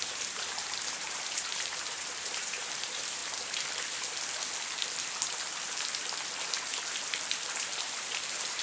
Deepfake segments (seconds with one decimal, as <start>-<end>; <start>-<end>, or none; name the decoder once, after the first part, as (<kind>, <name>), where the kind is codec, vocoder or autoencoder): 0.0-3.2 (vocoder, BigVGAN v2); 7.5-8.6